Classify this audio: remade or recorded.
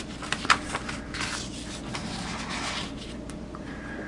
recorded